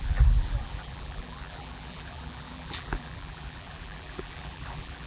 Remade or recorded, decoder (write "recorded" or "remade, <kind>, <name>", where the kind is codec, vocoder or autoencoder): remade, vocoder, BigVGAN v2